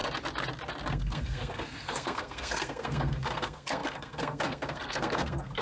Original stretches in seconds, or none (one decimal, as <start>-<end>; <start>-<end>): 0.0-0.9